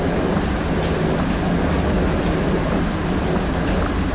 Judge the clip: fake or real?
real